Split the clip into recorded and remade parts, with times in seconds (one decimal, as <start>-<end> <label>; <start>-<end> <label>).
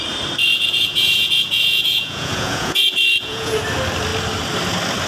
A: 0.0-0.5 recorded; 0.5-3.6 remade; 3.6-5.1 recorded